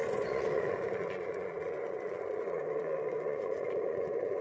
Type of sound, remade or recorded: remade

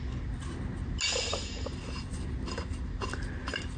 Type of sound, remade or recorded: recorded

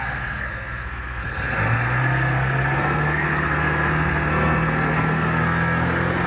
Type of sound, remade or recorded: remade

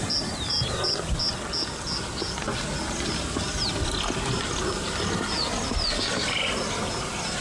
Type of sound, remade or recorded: recorded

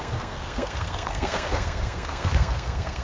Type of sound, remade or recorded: remade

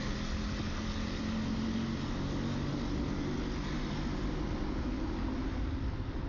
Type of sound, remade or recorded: recorded